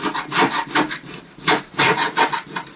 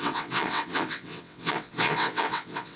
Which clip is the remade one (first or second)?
second